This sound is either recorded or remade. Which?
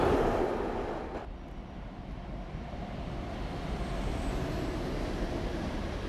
recorded